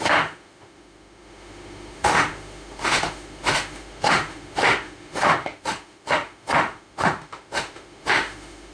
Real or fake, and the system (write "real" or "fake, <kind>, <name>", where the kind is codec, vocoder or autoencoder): fake, autoencoder, DAC-VAE